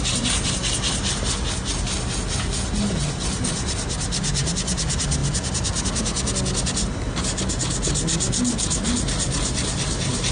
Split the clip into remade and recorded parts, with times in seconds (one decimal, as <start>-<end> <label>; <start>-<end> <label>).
0.0-10.3 recorded